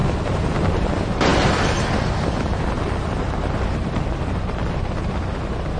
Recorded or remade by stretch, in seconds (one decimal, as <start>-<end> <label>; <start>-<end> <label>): 0.0-0.9 remade; 0.9-1.3 recorded; 1.3-4.7 remade; 4.7-5.8 recorded

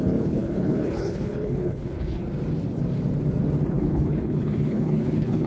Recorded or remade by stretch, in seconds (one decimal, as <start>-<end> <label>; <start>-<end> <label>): 0.0-2.2 remade; 2.2-3.7 recorded; 3.7-5.5 remade

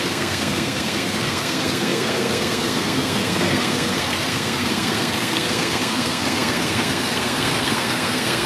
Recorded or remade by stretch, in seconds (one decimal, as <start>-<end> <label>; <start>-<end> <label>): 0.0-8.5 remade

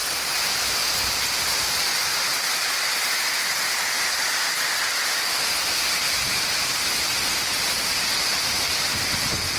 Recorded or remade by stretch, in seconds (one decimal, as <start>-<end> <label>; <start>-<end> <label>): 0.0-2.2 remade; 2.2-9.6 recorded

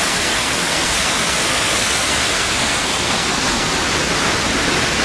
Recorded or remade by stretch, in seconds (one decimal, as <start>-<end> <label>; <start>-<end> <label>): 0.0-3.7 remade; 3.7-5.0 recorded

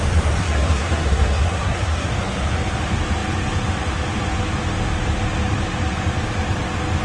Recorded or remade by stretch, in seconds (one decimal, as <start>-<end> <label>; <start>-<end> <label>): 0.0-0.4 recorded; 0.4-2.1 remade; 2.1-7.0 recorded

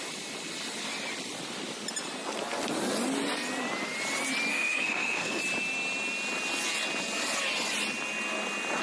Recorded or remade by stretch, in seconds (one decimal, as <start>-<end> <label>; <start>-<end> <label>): 0.0-4.5 recorded; 4.5-5.4 remade; 5.4-8.8 recorded